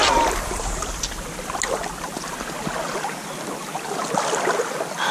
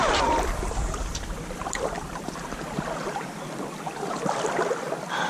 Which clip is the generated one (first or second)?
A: second